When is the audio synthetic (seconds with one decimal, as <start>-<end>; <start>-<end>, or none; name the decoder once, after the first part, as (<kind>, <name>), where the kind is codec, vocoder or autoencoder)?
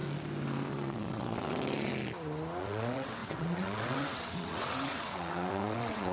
0.7-1.9 (vocoder, WaveNeXt); 2.6-6.1